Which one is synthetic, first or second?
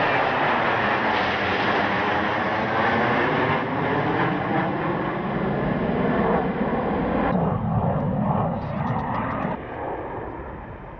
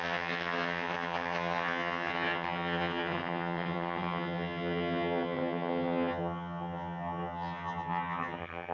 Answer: second